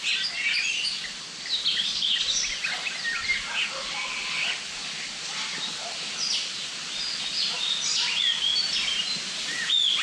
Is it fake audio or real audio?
real